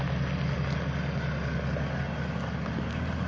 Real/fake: real